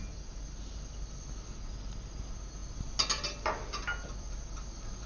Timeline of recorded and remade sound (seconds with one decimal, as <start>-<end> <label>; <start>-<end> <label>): 0.0-5.1 recorded